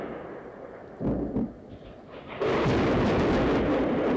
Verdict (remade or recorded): recorded